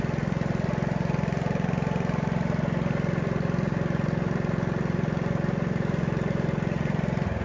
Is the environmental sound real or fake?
real